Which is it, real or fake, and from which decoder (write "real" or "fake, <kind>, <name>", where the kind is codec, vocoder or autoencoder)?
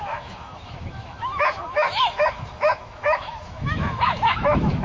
fake, autoencoder, DAC-VAE